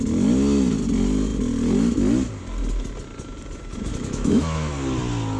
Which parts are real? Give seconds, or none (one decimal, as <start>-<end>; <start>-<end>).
0.0-3.9; 4.7-5.4